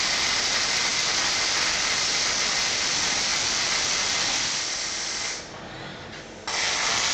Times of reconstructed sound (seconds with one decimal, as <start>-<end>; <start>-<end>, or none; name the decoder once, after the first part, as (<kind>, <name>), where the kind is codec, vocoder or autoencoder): 3.3-5.4 (vocoder, BigVGAN v2); 5.9-7.1